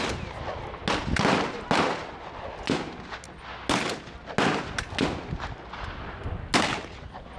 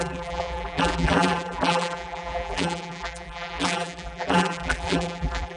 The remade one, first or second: second